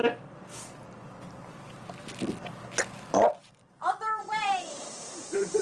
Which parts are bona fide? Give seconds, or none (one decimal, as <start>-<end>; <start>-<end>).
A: 0.0-3.4